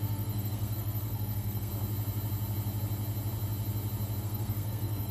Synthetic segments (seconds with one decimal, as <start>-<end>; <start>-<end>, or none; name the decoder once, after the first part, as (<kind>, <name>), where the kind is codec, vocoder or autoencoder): 0.0-1.7 (codec, SNAC); 4.2-5.1